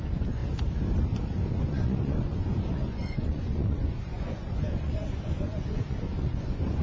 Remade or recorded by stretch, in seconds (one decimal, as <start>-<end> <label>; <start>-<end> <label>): 0.0-0.4 remade; 0.4-1.7 recorded; 1.7-6.8 remade